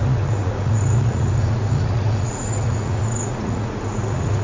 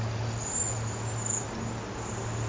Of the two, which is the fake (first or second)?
first